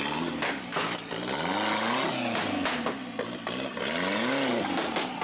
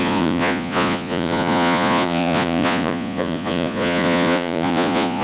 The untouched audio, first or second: first